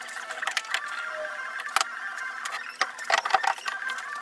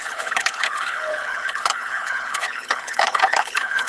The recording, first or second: first